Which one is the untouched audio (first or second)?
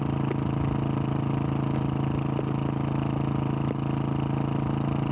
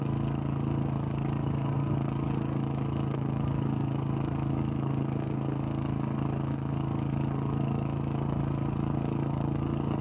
first